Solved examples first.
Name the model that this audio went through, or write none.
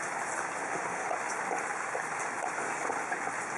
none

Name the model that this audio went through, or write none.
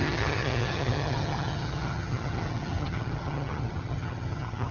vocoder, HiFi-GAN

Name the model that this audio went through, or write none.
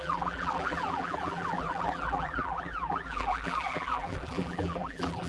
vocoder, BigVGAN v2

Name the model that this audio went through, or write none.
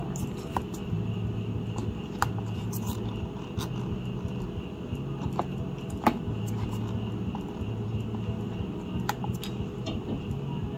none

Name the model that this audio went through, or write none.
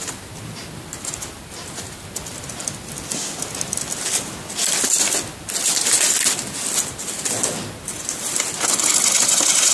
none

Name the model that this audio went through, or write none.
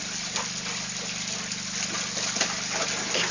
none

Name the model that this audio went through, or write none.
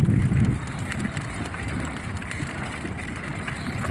none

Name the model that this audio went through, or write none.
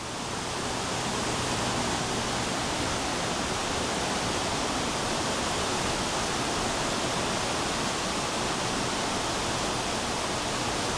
none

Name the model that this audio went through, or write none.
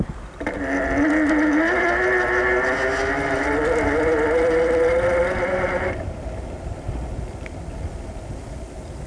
none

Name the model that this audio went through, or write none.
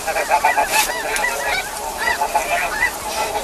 none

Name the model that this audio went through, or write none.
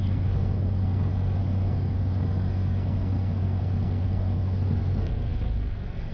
codec, SNAC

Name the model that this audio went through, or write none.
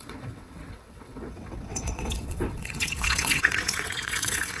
vocoder, WaveNeXt